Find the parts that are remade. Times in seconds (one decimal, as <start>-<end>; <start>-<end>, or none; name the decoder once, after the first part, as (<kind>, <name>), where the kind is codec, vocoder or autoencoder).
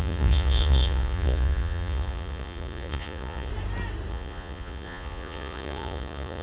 0.0-3.5 (vocoder, Vocos); 4.1-6.4